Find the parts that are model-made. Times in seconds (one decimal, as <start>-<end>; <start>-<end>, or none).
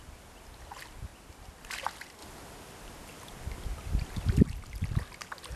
none